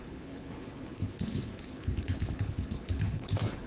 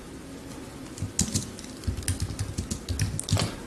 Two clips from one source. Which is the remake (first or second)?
first